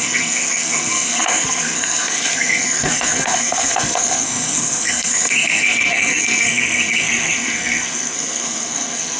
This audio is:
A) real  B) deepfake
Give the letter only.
B